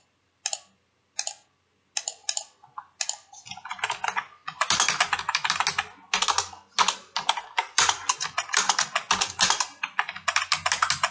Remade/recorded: recorded